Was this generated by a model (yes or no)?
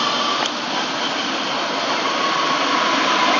no